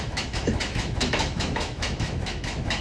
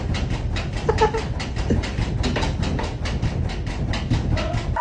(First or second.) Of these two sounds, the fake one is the first